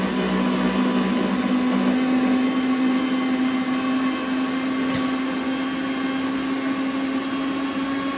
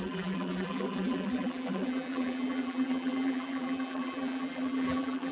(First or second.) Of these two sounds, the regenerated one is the second